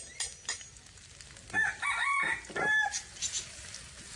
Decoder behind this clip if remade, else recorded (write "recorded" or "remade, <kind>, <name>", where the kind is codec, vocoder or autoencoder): recorded